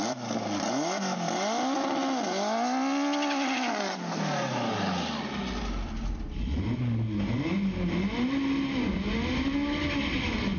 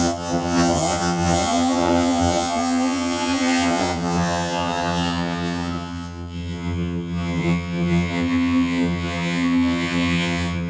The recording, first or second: first